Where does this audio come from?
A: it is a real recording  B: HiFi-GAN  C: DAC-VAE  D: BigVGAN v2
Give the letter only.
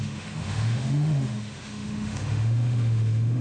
C